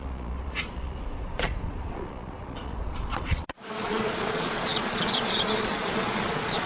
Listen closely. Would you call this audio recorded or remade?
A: remade